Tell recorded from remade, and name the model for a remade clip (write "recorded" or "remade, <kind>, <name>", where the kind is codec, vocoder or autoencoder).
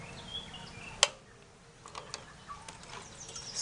recorded